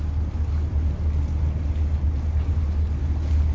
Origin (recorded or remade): recorded